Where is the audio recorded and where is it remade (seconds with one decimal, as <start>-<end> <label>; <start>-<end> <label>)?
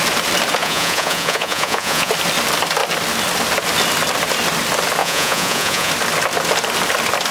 0.0-0.6 recorded; 0.6-2.1 remade; 2.1-5.0 recorded; 5.0-5.9 remade; 5.9-7.3 recorded